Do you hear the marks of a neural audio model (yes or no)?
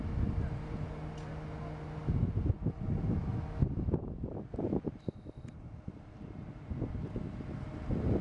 no